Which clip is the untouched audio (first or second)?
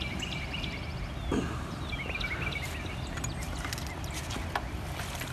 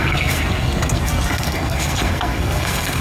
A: first